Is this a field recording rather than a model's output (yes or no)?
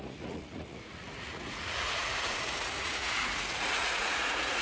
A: no